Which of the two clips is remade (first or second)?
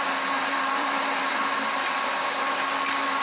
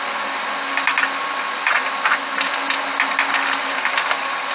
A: first